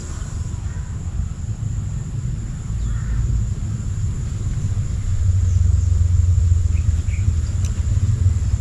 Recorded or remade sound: recorded